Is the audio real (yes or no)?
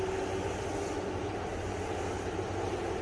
yes